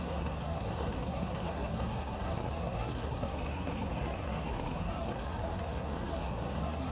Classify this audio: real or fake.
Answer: fake